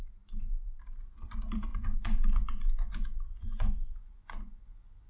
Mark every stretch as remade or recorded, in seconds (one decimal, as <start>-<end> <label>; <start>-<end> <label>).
0.0-0.8 remade; 0.8-1.7 recorded; 1.7-5.1 remade